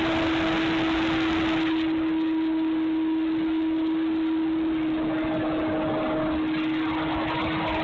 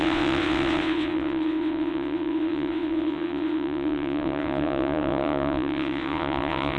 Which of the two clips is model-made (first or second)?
second